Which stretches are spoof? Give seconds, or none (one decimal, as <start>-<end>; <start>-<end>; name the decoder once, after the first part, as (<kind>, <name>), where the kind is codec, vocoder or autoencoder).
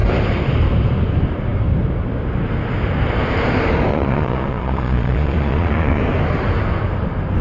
3.9-6.0 (vocoder, Vocos)